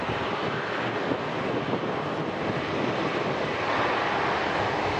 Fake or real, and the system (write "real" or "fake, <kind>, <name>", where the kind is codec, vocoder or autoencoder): real